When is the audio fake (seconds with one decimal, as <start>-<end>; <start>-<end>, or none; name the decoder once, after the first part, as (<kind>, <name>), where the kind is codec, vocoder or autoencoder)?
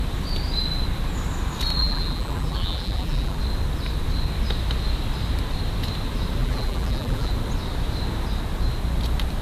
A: 1.8-3.4 (vocoder, BigVGAN v2); 6.4-7.3